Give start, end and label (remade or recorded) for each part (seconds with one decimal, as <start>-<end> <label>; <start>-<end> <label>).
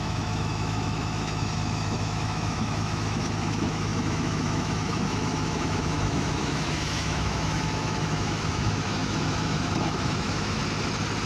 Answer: 0.0-10.6 remade; 10.6-11.3 recorded